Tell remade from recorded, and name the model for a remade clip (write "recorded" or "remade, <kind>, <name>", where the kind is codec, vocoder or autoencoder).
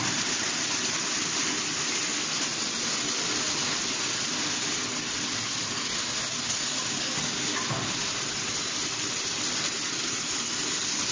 recorded